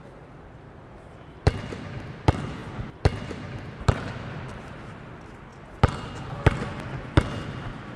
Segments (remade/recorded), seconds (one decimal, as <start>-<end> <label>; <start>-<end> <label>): 0.0-5.5 remade; 5.5-8.0 recorded